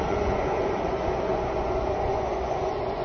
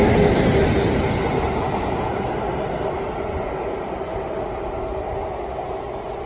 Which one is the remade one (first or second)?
first